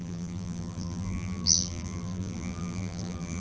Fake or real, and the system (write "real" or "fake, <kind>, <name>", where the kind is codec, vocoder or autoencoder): fake, vocoder, BigVGAN v2